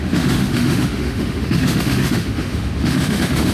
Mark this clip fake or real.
fake